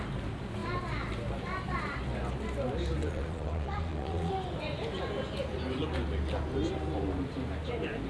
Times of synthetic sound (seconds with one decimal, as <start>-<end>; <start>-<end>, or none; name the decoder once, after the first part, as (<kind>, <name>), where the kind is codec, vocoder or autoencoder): 3.0-4.3 (vocoder, Vocos)